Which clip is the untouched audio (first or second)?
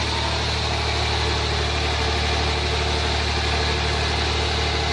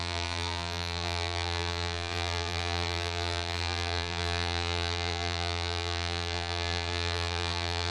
first